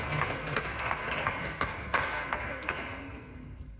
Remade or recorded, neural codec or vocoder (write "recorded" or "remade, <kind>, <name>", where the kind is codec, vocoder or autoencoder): remade, codec, SNAC